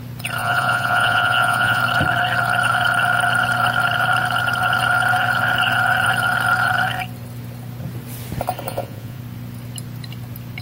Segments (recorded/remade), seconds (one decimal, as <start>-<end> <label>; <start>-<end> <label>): 0.0-0.4 recorded; 0.4-1.8 remade; 1.8-8.7 recorded; 8.7-9.2 remade; 9.2-10.6 recorded